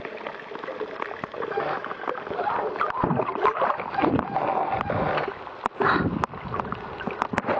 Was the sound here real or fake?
real